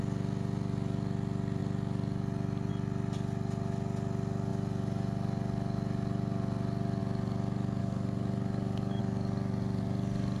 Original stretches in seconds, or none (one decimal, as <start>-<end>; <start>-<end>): 0.0-7.8; 9.0-10.4